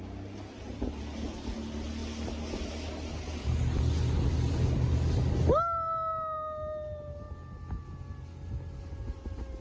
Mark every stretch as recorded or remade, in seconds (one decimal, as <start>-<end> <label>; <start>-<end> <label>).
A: 0.0-9.6 recorded